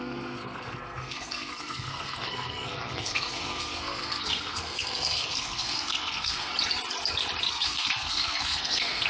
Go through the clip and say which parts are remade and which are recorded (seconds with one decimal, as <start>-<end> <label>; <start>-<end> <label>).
0.0-6.5 remade; 6.5-7.5 recorded; 7.5-9.1 remade

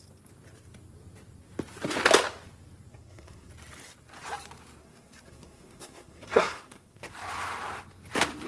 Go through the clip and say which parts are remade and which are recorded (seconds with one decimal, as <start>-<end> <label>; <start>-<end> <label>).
0.0-2.9 recorded; 2.9-3.5 remade; 3.5-4.8 recorded; 4.8-7.1 remade; 7.1-8.5 recorded

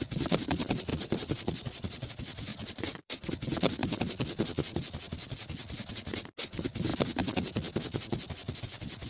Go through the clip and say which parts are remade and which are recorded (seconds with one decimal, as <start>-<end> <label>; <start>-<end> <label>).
0.0-0.9 recorded; 0.9-2.1 remade; 2.1-2.5 recorded; 2.5-3.3 remade; 3.3-9.1 recorded

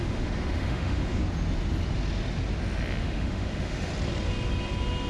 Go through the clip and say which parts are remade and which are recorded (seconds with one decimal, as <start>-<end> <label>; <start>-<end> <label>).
0.0-1.2 remade; 1.2-3.0 recorded; 3.0-3.9 remade; 3.9-5.1 recorded

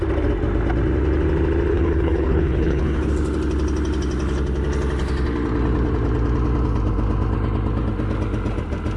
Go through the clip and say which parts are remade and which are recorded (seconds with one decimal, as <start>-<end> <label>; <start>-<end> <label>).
0.0-1.7 recorded; 1.7-3.1 remade; 3.1-9.0 recorded